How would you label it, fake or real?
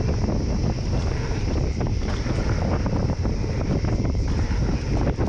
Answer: real